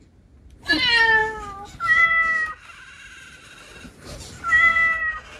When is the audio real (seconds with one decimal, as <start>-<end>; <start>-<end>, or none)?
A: 0.0-5.4